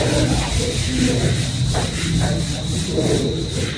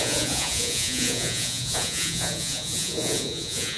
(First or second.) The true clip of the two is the first